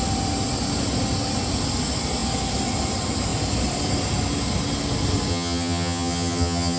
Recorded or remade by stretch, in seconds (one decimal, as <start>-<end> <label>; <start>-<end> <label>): 0.0-5.3 recorded; 5.3-6.8 remade